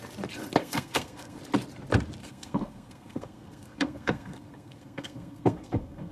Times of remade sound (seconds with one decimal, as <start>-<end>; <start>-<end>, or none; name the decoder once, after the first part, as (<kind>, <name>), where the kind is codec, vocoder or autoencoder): 0.6-1.4 (codec, SNAC); 2.2-6.1